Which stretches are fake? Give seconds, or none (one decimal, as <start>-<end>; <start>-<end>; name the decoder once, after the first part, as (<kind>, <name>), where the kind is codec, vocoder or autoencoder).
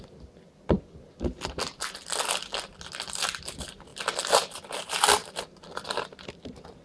none